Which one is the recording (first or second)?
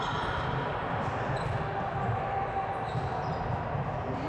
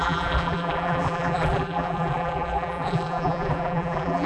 first